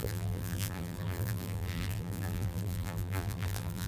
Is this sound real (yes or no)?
no